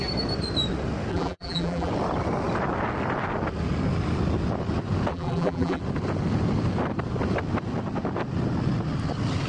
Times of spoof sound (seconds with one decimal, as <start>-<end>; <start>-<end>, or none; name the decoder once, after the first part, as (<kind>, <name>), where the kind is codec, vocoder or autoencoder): 1.1-1.9 (vocoder, BigVGAN v2); 5.1-5.8